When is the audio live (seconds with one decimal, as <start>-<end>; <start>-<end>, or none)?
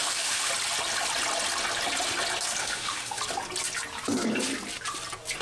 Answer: 0.5-2.6; 3.2-5.4